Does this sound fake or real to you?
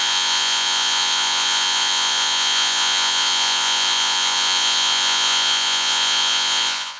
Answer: fake